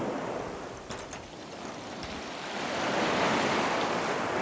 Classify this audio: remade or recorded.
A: recorded